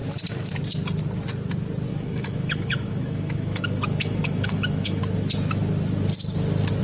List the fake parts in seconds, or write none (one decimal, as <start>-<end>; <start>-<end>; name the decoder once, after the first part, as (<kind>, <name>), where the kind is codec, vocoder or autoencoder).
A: 1.9-5.0 (autoencoder, DAC-VAE)